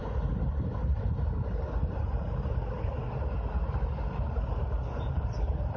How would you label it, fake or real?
real